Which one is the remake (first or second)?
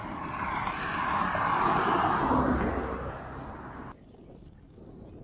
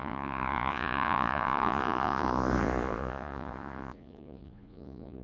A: second